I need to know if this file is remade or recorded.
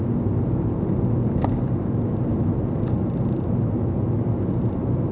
recorded